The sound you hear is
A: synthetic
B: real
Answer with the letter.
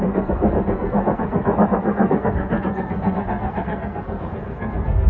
A